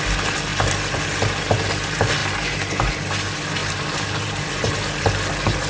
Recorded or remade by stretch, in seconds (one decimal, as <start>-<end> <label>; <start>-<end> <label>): 0.0-2.2 recorded; 2.2-2.9 remade; 2.9-3.6 recorded; 3.6-5.0 remade; 5.0-5.7 recorded